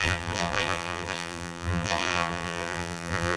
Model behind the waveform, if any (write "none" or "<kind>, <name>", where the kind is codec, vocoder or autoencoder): vocoder, BigVGAN v2